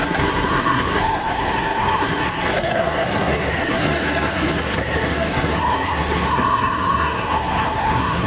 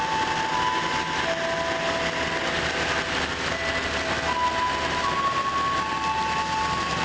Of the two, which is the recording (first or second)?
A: second